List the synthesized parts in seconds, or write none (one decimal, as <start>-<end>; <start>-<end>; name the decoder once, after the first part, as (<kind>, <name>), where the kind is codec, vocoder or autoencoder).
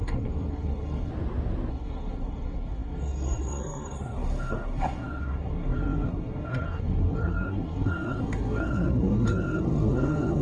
0.0-1.1 (codec, SNAC); 1.7-10.4